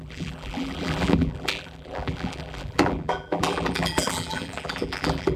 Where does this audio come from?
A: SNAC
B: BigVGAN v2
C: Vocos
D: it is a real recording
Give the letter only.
B